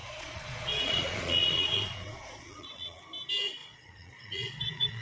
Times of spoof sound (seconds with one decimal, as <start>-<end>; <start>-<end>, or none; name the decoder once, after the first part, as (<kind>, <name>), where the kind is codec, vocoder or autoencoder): 0.0-3.0 (vocoder, Vocos); 3.6-5.0